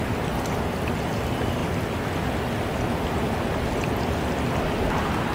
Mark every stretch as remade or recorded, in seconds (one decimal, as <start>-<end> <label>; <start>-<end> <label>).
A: 0.0-5.3 recorded